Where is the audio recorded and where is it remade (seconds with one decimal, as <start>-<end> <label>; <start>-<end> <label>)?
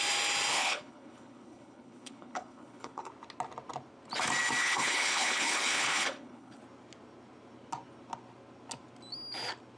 0.0-0.5 recorded; 0.5-3.1 remade; 3.1-4.6 recorded; 4.6-6.6 remade; 6.6-9.8 recorded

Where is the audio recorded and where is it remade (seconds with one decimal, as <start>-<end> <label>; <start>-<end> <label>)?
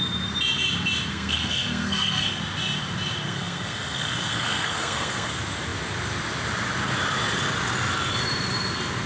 0.0-1.1 recorded; 1.1-2.4 remade; 2.4-3.2 recorded; 3.2-5.3 remade; 5.3-9.1 recorded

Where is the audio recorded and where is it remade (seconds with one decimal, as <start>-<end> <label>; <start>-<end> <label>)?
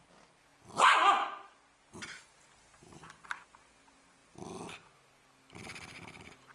0.0-6.5 recorded